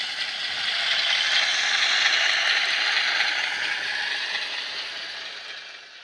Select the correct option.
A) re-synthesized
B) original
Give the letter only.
B